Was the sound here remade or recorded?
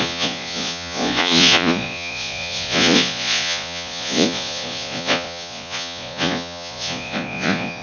remade